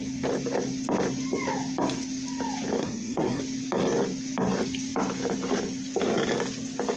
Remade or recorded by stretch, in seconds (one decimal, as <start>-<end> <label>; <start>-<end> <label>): 0.0-2.8 recorded; 2.8-3.4 remade; 3.4-7.0 recorded